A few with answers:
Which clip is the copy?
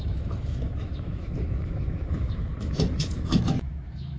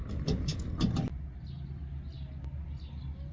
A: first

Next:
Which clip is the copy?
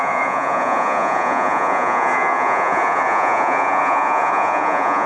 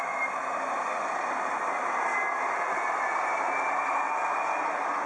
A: first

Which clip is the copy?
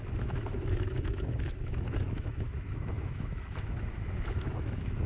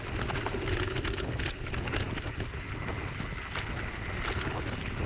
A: first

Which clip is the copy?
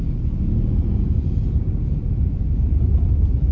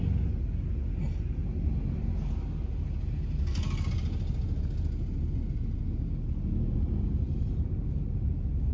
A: first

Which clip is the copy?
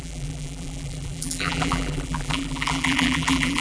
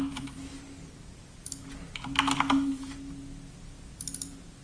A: first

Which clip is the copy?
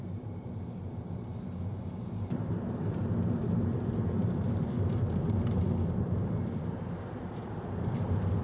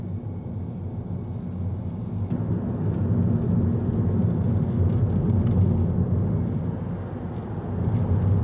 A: first